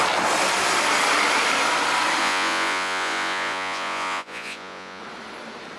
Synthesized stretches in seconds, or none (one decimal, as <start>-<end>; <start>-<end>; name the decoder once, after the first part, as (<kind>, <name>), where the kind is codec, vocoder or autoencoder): 2.2-5.0 (vocoder, Vocos)